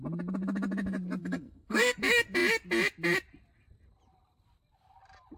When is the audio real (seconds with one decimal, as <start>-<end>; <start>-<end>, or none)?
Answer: 0.0-1.2; 2.0-5.4